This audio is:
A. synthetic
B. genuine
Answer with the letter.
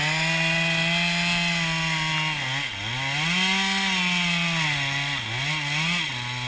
B